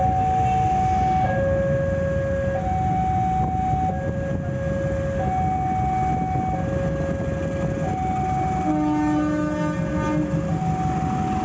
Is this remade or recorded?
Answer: recorded